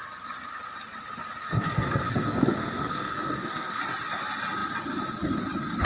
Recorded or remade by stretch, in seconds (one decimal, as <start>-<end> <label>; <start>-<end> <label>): 0.0-1.4 recorded; 1.4-3.8 remade; 3.8-5.9 recorded